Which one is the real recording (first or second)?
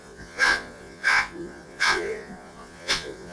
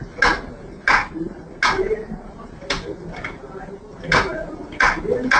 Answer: second